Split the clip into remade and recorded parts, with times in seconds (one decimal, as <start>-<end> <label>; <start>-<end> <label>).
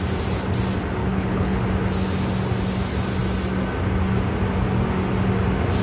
0.0-1.0 recorded; 1.0-1.6 remade; 1.6-5.8 recorded